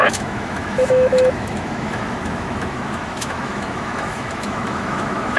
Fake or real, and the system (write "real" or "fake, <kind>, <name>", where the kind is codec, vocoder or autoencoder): fake, autoencoder, DAC-VAE